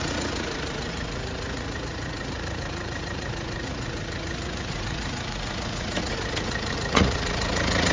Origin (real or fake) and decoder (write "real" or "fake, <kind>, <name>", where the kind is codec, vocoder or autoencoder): fake, vocoder, Vocos